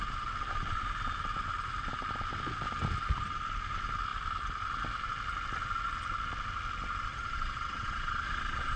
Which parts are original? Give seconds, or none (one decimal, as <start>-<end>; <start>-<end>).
0.0-7.1